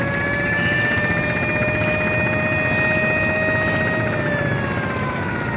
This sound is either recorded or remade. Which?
recorded